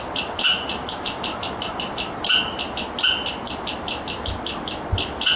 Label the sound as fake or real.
real